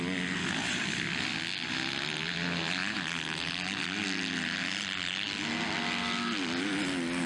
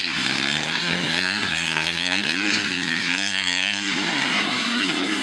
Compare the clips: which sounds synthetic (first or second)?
second